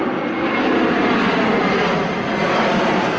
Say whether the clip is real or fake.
real